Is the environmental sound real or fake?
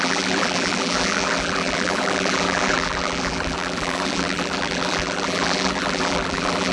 fake